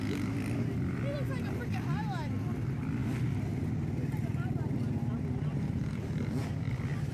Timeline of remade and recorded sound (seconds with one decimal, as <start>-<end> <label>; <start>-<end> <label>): 0.0-7.1 recorded